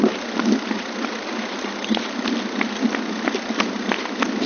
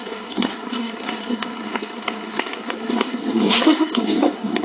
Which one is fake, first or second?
second